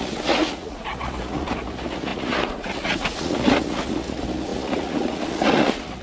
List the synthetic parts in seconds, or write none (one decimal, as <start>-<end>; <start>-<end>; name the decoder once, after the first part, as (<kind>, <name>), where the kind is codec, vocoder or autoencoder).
0.0-6.0 (vocoder, Vocos)